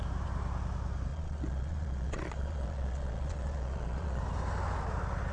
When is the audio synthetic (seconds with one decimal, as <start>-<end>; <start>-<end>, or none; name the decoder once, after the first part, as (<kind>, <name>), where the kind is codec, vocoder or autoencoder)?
1.1-4.2 (vocoder, Vocos)